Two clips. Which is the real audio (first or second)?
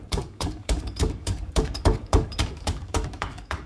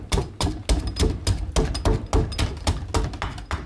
second